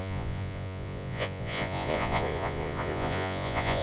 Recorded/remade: remade